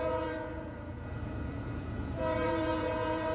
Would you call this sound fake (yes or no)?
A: yes